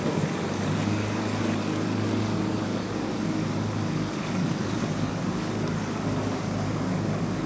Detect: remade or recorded remade